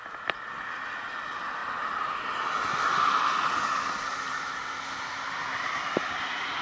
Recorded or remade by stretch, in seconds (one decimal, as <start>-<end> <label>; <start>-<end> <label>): 0.0-6.6 recorded